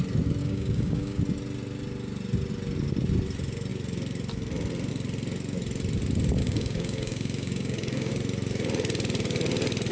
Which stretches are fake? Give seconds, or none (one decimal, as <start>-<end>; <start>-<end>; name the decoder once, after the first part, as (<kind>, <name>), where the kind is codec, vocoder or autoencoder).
0.4-1.2 (codec, DAC); 6.4-8.1